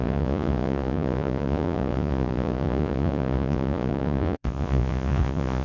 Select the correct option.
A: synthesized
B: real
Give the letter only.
A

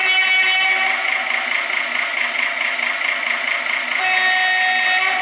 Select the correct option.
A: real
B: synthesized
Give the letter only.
A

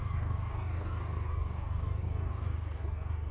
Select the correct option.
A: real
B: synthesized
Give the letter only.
B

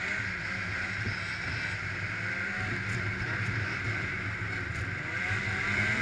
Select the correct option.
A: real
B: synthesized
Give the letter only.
A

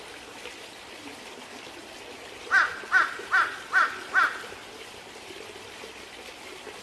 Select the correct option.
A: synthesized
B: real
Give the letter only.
A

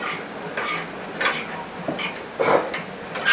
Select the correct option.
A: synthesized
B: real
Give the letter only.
B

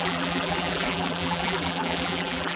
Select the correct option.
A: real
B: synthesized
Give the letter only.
B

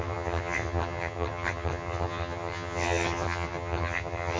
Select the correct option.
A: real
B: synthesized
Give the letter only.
B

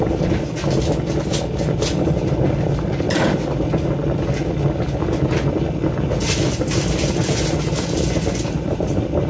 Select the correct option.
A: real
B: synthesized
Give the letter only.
A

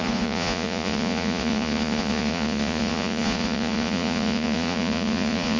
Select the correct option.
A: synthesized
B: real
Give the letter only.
A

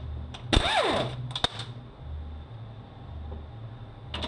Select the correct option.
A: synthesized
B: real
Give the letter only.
B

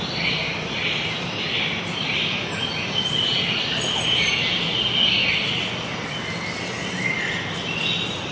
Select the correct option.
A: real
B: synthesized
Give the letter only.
A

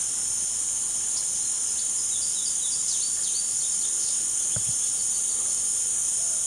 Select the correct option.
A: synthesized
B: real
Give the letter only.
B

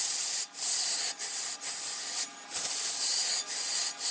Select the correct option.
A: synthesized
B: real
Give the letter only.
B